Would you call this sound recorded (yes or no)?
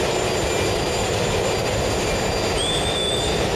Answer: yes